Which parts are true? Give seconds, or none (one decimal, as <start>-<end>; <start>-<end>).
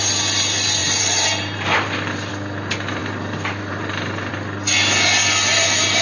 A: 0.0-0.8; 2.3-3.0; 4.3-6.0